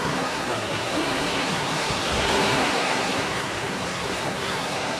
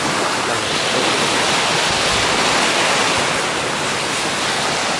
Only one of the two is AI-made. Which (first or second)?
first